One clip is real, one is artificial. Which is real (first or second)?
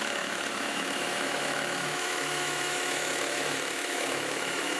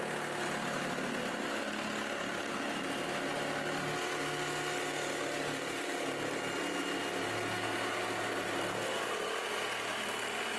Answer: second